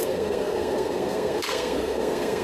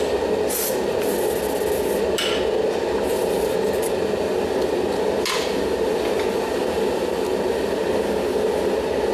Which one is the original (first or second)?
second